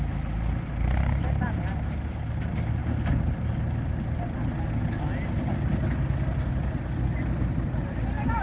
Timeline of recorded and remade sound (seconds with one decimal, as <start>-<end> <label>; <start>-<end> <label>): 0.0-8.4 recorded